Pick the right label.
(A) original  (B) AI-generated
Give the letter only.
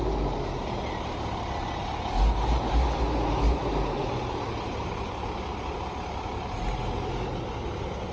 A